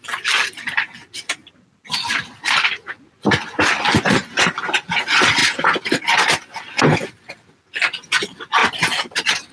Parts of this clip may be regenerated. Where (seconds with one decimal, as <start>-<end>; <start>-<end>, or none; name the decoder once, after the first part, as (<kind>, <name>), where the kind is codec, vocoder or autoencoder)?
none

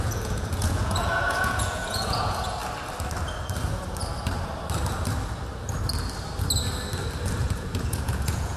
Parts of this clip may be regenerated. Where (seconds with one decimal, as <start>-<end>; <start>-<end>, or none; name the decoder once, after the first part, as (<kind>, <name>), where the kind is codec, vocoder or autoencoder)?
0.0-2.6 (vocoder, Vocos); 7.4-8.6

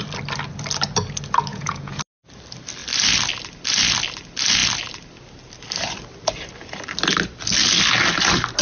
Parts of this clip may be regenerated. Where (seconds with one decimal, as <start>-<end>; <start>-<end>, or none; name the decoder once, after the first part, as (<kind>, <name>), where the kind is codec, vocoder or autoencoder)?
1.5-2.0 (vocoder, Vocos)

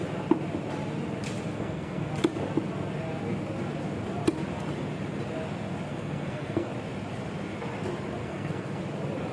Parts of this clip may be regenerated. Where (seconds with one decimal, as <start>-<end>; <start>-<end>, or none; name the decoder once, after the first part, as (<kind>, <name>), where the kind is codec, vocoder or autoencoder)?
1.5-2.1 (codec, SNAC); 5.9-6.7; 8.2-8.8

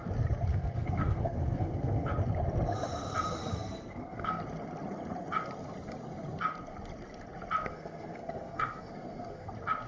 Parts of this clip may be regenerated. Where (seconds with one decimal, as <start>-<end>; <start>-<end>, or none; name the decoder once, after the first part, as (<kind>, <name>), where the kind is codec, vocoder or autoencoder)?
0.5-2.1 (codec, SNAC); 3.4-4.4; 7.7-9.5

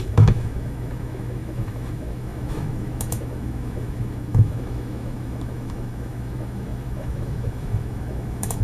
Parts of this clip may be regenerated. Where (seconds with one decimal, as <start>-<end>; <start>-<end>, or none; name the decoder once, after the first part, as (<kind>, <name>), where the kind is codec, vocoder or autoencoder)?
0.0-8.6 (autoencoder, DAC-VAE)

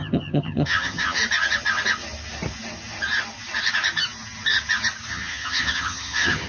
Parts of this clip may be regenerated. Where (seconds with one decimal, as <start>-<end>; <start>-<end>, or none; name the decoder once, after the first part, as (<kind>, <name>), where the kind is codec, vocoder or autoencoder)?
0.0-1.2 (vocoder, HiFi-GAN); 5.1-6.5

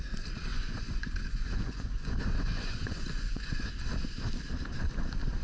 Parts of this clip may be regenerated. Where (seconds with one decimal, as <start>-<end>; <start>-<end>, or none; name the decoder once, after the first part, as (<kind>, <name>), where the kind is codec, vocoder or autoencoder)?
0.5-3.7 (vocoder, Vocos)